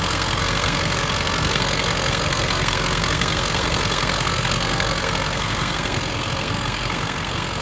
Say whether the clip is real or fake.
fake